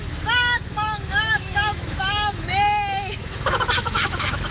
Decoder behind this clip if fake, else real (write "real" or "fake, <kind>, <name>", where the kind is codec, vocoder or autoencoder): fake, autoencoder, DAC-VAE